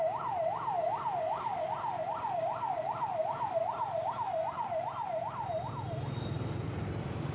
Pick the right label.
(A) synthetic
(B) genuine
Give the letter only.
B